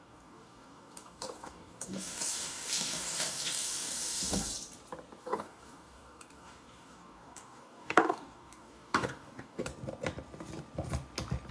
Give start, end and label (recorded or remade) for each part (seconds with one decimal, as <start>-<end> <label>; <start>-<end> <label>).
0.0-4.5 remade; 4.5-5.2 recorded; 5.2-9.7 remade; 9.7-11.5 recorded